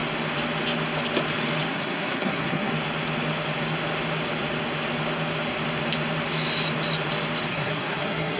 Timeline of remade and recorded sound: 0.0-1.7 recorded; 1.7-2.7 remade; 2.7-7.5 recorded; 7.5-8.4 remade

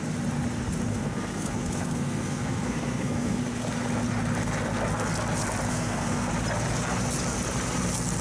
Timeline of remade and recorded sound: 0.0-0.9 recorded; 0.9-3.4 remade; 3.4-5.7 recorded; 5.7-6.3 remade; 6.3-8.2 recorded

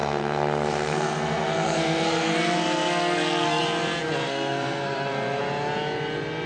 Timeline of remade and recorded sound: 0.0-3.6 remade; 3.6-4.2 recorded; 4.2-5.4 remade; 5.4-6.5 recorded